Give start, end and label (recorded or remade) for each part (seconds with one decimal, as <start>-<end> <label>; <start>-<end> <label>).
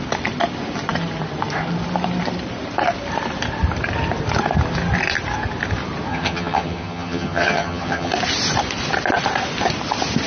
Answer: 0.0-6.1 recorded; 6.1-8.1 remade; 8.1-10.3 recorded